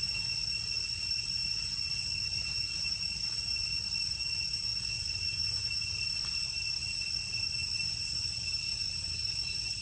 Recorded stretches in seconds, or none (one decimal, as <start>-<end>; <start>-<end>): 0.0-9.8